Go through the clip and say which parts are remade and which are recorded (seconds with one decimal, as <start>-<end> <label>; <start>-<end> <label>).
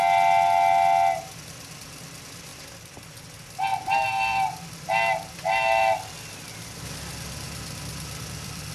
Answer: 0.0-2.5 recorded; 2.5-3.1 remade; 3.1-3.7 recorded; 3.7-8.7 remade